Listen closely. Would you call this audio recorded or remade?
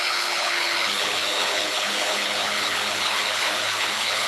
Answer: remade